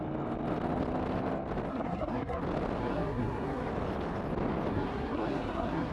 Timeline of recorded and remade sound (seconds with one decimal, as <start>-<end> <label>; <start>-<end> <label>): 0.0-1.7 recorded; 1.7-2.4 remade; 2.4-2.8 recorded; 2.8-3.7 remade; 3.7-4.7 recorded; 4.7-5.9 remade